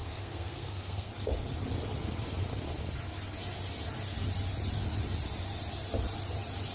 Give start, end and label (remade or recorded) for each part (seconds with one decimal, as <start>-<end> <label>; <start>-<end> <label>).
0.0-1.1 remade; 1.1-6.7 recorded